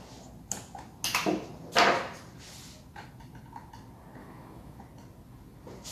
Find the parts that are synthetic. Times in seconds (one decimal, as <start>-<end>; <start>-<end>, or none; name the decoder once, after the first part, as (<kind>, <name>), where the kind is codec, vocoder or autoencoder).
4.2-4.8 (autoencoder, DAC-VAE)